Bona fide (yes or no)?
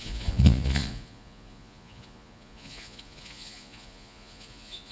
no